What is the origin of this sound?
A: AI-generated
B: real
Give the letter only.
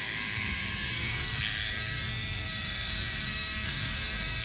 A